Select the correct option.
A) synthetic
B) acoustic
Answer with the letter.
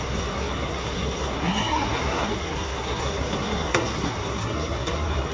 A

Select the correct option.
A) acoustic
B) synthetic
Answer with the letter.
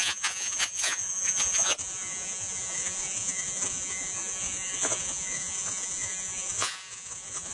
B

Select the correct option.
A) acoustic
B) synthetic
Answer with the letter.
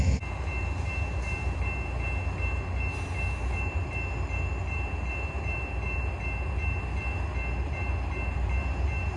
A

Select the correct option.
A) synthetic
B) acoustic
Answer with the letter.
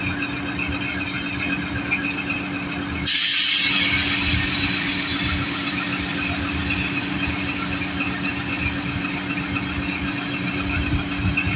B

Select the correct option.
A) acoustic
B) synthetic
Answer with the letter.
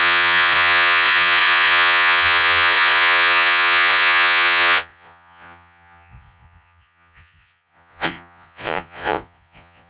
B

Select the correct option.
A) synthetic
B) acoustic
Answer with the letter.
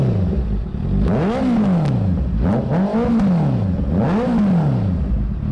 B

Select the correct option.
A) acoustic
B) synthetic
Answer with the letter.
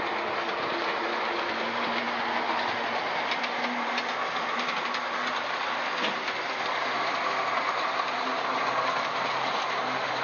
A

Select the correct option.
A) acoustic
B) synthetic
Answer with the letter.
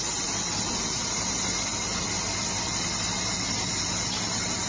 A